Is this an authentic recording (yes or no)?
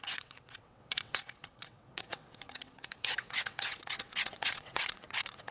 no